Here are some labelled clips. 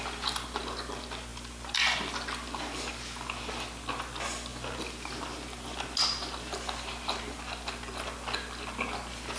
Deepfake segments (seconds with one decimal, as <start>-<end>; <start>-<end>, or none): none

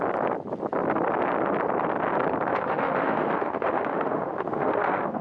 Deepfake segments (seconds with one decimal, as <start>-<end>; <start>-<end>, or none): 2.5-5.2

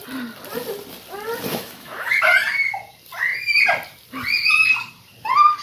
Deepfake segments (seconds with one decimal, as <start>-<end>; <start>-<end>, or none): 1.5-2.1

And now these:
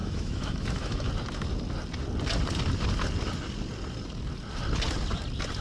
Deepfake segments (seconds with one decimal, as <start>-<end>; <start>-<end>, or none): 0.0-1.1

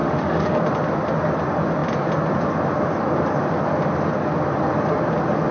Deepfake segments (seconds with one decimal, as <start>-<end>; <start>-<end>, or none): 0.0-0.6